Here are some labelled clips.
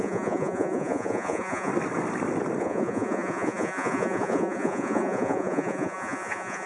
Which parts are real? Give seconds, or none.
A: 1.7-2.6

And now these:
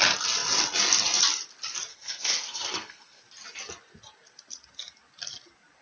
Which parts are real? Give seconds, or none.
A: 0.0-1.9; 3.2-5.8

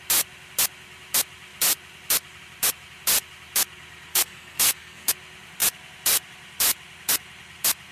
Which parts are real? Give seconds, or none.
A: 0.0-4.1; 5.1-7.9

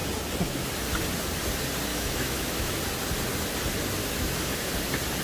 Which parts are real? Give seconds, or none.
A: 0.0-1.9; 2.8-4.0; 4.7-5.2

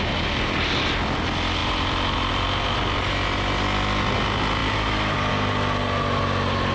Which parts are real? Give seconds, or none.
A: 0.0-6.7

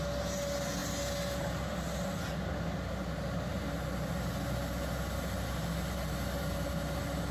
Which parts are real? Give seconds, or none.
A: 0.0-7.3

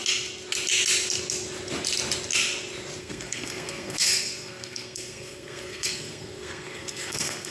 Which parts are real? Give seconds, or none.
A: 0.0-3.0